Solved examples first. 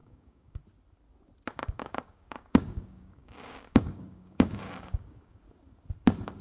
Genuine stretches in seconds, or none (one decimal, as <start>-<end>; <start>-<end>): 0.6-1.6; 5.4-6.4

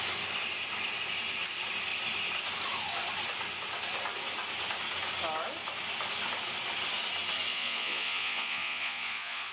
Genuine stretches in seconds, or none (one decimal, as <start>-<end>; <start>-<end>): 0.0-7.5

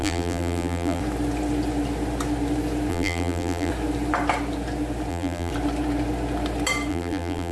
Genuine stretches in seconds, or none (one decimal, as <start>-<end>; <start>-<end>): 1.0-2.9; 3.7-5.1; 5.5-6.9